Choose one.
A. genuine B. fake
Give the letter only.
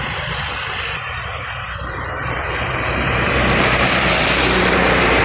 B